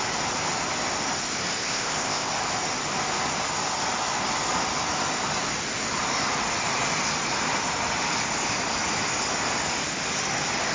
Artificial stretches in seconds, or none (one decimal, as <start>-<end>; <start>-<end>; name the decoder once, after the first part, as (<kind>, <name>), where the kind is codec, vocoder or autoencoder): 1.6-2.3 (codec, ZipCodec)